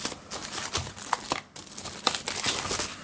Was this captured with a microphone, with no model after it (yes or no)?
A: yes